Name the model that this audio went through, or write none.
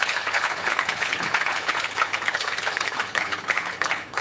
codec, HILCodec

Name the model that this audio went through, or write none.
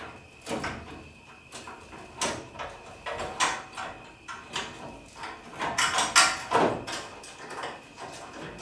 none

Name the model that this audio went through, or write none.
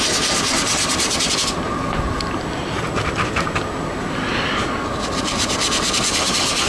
none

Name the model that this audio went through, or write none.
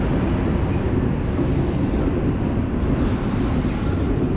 none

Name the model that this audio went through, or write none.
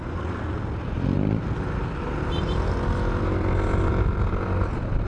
none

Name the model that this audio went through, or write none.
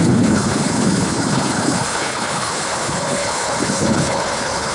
codec, HILCodec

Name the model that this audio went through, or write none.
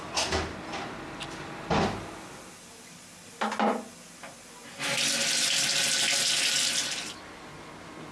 none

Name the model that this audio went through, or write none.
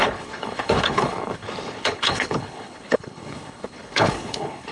codec, HILCodec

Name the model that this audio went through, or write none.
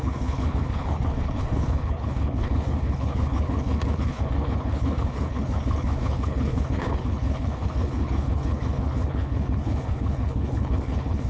codec, HILCodec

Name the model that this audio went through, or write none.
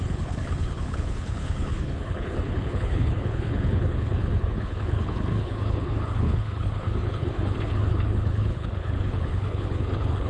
codec, HILCodec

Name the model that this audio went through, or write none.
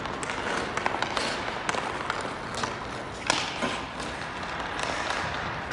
none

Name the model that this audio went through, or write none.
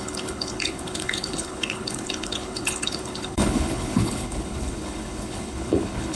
codec, HILCodec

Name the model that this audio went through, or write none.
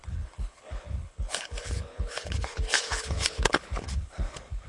codec, HILCodec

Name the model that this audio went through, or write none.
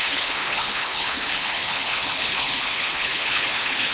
codec, HILCodec